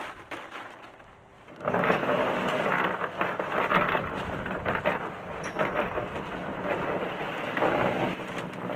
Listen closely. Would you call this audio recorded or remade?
recorded